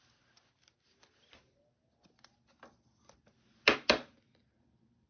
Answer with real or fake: real